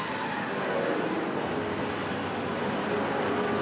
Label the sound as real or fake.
real